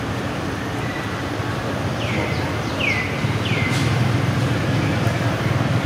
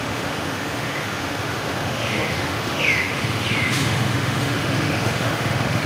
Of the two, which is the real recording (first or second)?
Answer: first